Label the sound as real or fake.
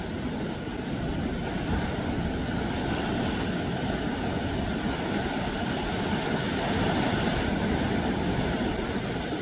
real